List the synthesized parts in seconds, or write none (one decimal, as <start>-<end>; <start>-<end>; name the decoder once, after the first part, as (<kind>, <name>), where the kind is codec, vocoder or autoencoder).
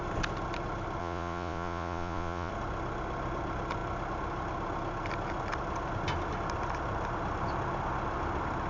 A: 1.0-2.5 (vocoder, Vocos)